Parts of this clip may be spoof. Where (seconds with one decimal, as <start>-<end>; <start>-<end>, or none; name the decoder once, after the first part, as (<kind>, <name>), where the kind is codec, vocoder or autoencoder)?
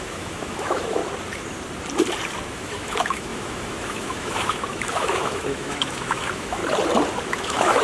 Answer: 0.0-1.0 (autoencoder, DAC-VAE); 2.5-6.6; 7.3-7.8